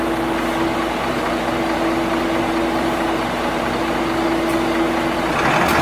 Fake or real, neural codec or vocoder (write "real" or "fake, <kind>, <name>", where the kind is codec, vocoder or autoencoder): real